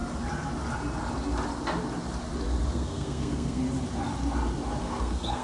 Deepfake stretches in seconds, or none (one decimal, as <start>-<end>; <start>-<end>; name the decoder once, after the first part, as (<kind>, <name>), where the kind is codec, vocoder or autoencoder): 2.7-3.6 (codec, SNAC); 4.8-5.4